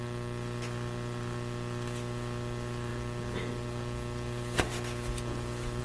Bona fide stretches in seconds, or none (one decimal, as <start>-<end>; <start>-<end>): 0.0-5.8

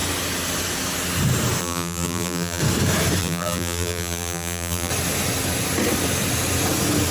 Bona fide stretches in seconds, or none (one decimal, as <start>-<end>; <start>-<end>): 0.0-1.6; 2.6-3.2; 4.9-7.1

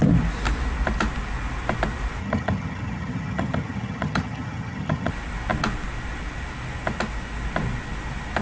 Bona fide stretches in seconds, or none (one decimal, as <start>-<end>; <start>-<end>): 0.0-2.2; 5.1-8.4

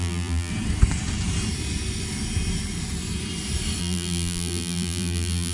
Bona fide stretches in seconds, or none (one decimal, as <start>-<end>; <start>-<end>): 0.5-3.8

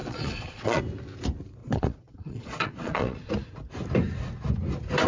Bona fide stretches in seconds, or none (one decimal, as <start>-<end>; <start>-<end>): 0.8-1.6; 3.3-5.1

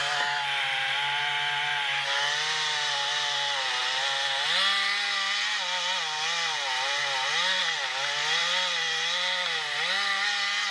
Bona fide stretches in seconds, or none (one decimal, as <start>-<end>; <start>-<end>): 0.0-10.7